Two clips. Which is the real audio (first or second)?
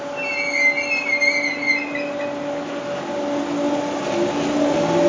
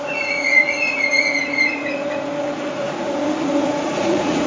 first